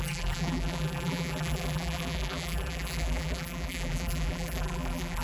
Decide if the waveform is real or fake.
fake